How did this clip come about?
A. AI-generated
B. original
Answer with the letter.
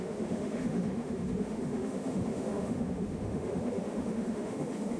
A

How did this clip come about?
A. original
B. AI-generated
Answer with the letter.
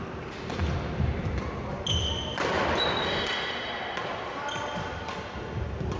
A